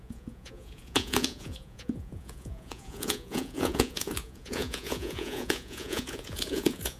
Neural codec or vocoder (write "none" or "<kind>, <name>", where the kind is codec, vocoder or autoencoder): vocoder, Vocos